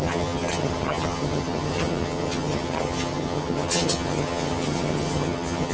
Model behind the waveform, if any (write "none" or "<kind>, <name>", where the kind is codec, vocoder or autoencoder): vocoder, HiFi-GAN